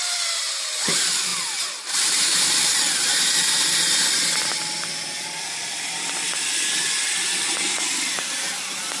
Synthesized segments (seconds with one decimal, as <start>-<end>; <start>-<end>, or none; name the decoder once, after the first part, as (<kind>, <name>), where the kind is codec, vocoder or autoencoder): none